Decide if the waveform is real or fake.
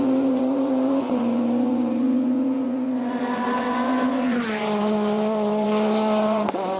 fake